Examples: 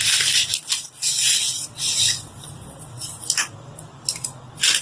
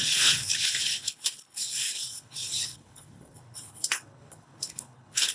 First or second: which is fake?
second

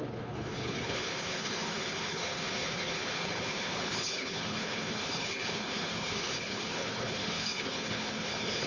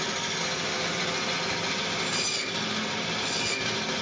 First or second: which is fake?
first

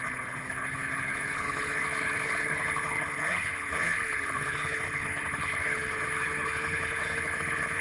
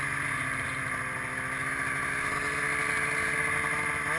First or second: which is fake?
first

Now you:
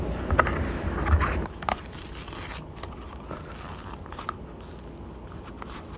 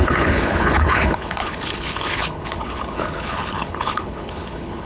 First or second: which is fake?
second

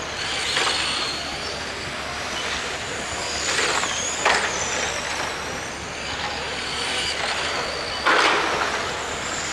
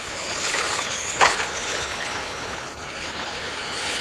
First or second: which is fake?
second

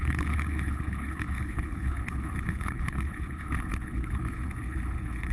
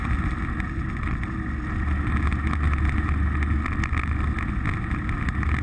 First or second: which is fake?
first